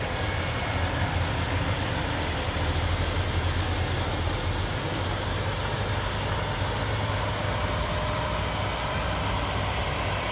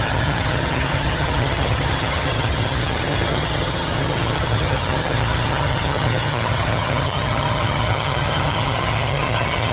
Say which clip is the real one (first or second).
first